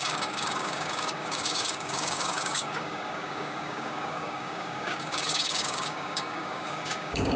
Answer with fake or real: fake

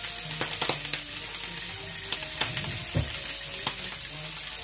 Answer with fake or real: real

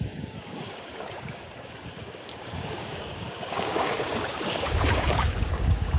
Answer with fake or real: fake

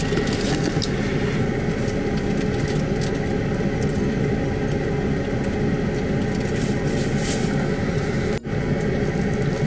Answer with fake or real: real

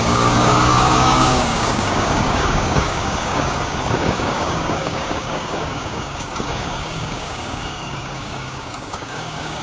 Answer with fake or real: fake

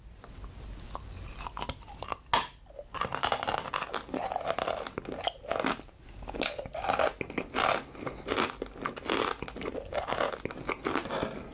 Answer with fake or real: real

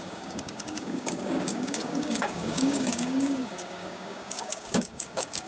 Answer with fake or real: fake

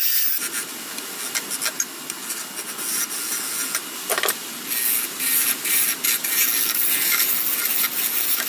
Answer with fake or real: real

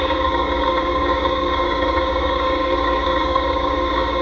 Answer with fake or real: fake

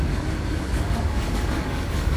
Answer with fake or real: fake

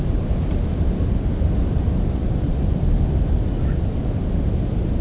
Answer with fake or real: real